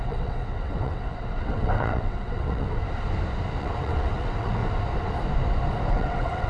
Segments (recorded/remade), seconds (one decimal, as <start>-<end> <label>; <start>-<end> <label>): 0.0-2.8 remade; 2.8-3.6 recorded; 3.6-4.6 remade; 4.6-5.9 recorded; 5.9-6.5 remade